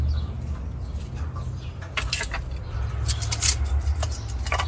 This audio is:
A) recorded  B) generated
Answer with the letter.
A